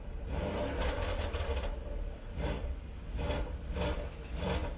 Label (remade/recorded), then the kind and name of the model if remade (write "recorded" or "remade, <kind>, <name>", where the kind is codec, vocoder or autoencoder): recorded